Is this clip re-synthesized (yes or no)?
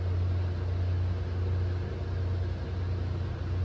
no